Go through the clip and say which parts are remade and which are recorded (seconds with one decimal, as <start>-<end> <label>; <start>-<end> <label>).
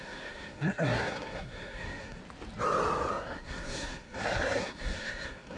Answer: 0.0-2.2 remade; 2.2-3.1 recorded; 3.1-5.6 remade